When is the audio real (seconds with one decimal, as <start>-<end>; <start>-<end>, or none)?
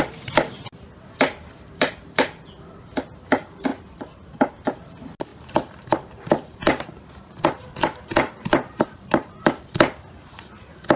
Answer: 0.0-5.3; 9.3-11.0